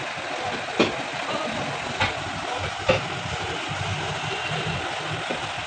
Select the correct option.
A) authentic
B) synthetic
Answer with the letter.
A